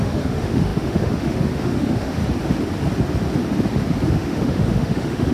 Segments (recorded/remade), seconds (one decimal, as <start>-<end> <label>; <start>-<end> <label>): 0.0-2.2 remade; 2.2-4.1 recorded; 4.1-5.3 remade